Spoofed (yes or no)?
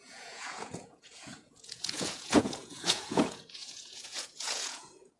yes